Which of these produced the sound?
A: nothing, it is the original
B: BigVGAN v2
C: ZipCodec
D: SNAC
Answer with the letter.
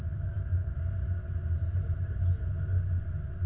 A